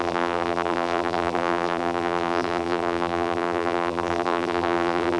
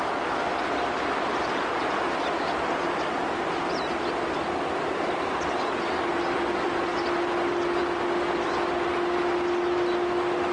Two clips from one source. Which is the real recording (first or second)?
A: second